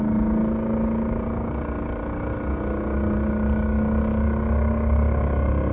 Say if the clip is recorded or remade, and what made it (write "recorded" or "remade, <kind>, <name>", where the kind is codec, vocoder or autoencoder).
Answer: remade, codec, DAC